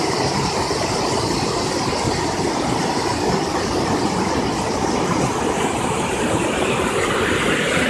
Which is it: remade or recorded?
recorded